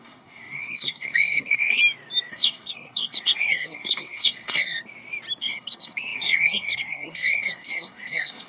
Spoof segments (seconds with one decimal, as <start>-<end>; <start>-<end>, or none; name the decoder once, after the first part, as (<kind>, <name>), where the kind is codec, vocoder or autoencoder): 0.0-1.8 (codec, SNAC); 2.3-4.8; 5.4-8.5